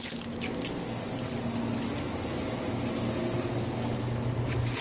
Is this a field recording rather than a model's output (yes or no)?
yes